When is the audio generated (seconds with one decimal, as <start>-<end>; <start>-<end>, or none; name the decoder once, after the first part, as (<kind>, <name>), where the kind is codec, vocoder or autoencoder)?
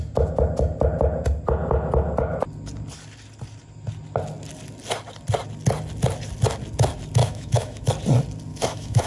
7.2-7.9 (autoencoder, DAC-VAE); 8.5-9.1